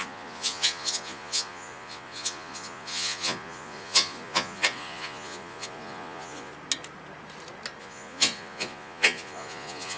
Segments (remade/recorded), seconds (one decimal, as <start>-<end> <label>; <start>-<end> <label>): 0.0-6.5 remade; 6.5-7.8 recorded; 7.8-10.0 remade